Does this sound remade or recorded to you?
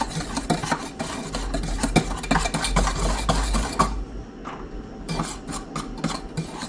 recorded